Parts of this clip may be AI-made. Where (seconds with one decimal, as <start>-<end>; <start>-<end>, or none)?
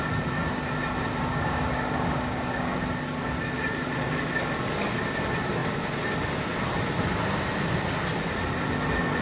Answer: 1.3-2.8